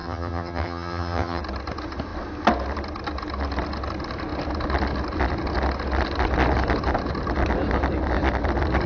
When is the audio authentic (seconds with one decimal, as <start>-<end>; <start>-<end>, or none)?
1.4-8.9